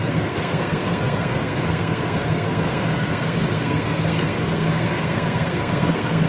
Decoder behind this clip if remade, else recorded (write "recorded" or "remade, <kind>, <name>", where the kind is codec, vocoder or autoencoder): remade, codec, SNAC